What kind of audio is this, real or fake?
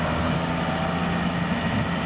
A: real